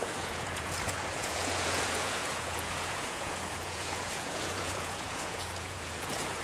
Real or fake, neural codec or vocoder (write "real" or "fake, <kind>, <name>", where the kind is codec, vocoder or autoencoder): fake, vocoder, Vocos